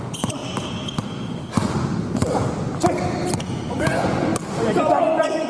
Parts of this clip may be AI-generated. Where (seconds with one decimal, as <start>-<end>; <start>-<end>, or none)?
0.0-0.4; 3.4-4.3; 5.0-5.5